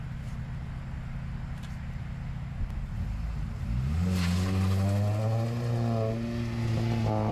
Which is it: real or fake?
real